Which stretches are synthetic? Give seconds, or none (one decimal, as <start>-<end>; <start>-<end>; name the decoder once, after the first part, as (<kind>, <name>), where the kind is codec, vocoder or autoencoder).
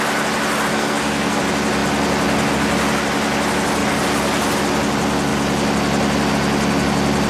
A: 0.7-1.4 (codec, SNAC)